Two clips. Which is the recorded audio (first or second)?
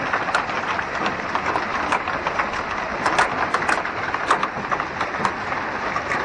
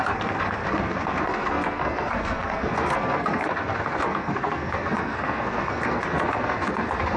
first